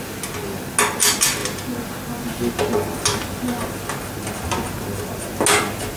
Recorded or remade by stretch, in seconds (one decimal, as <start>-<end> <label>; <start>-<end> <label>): 0.0-6.0 recorded